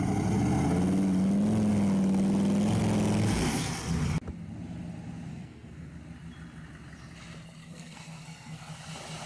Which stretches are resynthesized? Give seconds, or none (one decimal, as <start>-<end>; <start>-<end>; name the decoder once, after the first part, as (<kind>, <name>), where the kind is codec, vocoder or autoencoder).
5.3-5.9 (codec, SNAC); 7.6-8.7